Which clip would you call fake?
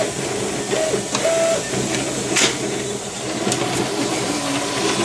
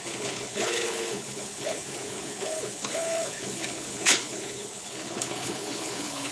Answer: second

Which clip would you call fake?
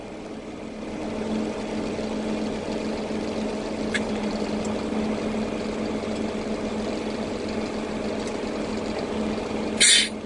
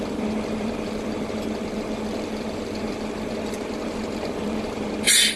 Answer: second